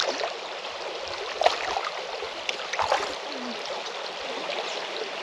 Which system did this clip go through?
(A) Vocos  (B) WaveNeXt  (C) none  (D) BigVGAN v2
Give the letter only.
C